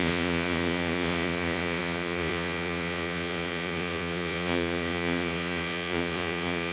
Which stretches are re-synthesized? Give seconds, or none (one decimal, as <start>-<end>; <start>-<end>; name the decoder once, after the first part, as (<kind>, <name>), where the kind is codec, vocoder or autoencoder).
0.0-6.7 (vocoder, Vocos)